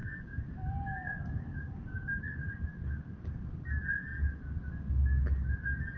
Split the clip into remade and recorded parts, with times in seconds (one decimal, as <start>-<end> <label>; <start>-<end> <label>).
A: 0.0-2.6 remade; 2.6-6.0 recorded